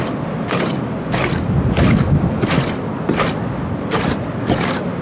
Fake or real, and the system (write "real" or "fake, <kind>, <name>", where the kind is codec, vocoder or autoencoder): real